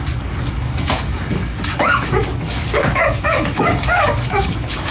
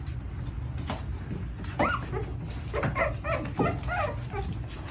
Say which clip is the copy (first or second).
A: first